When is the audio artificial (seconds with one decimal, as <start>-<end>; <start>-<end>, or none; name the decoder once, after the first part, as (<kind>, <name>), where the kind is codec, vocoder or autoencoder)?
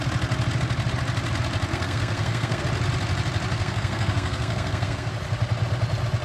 1.7-2.6 (codec, SNAC); 3.5-5.1